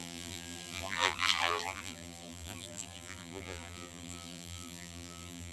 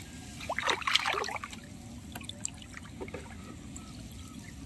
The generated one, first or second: first